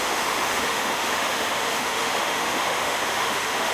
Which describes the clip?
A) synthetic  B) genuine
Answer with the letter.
A